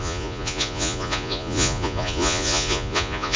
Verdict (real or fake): fake